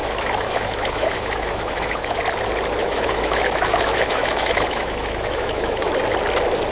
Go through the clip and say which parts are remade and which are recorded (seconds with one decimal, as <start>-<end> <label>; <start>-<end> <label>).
0.0-2.2 remade; 2.2-2.8 recorded; 2.8-5.9 remade; 5.9-6.7 recorded